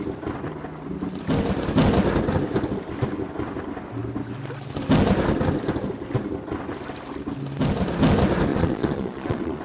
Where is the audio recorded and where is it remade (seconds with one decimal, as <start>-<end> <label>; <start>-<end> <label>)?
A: 0.0-8.5 recorded; 8.5-9.6 remade